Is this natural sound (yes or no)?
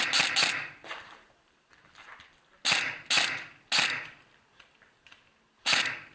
yes